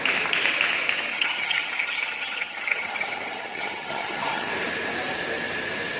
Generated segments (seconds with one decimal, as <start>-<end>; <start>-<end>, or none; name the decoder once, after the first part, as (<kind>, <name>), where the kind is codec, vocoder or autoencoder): 1.1-4.5 (vocoder, HiFi-GAN)